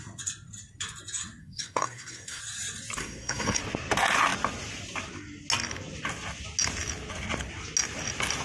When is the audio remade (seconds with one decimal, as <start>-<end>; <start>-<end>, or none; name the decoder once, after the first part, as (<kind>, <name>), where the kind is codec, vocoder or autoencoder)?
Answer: 1.4-2.4 (codec, SNAC); 3.0-3.6